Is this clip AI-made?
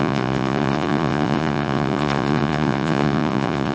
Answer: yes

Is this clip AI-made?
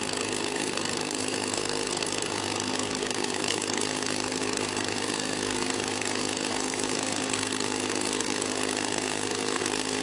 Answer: yes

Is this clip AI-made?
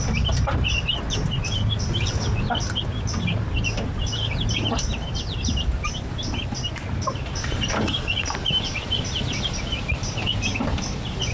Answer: no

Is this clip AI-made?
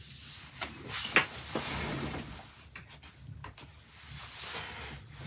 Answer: no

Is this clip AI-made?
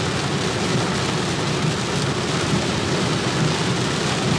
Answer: no